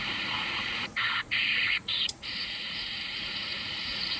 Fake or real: fake